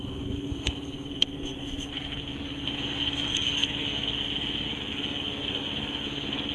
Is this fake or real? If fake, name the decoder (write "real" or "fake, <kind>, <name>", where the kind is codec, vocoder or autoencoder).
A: fake, codec, SNAC